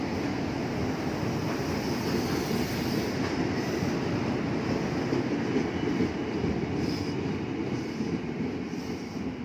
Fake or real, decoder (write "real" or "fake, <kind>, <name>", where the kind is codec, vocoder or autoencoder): real